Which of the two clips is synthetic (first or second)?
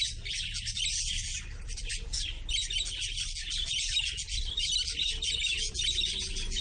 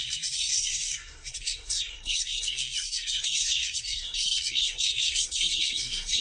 second